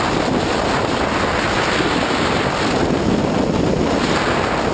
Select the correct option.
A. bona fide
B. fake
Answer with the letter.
A